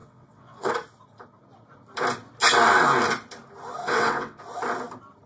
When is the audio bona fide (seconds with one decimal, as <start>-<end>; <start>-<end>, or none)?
0.7-3.8; 4.4-5.3